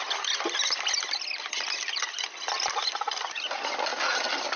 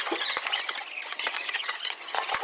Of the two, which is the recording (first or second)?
first